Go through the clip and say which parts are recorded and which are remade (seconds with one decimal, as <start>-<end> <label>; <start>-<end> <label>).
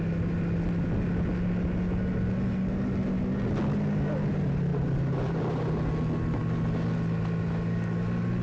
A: 0.0-8.4 recorded